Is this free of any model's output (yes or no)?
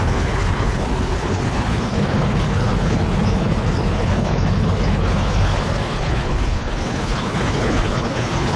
no